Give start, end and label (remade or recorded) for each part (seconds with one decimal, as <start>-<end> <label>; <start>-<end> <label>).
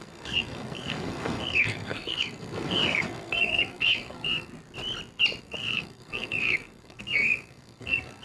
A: 0.0-4.5 remade; 4.5-5.4 recorded; 5.4-8.2 remade